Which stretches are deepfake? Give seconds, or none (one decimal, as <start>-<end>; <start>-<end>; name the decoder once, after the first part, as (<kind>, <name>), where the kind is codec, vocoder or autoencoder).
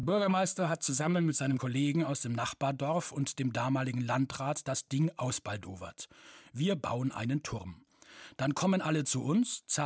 0.0-1.6 (codec, SNAC)